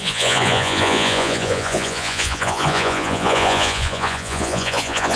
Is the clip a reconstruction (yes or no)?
yes